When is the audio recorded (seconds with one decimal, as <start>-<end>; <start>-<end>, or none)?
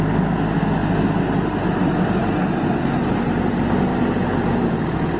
0.0-5.2